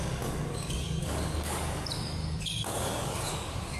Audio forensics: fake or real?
fake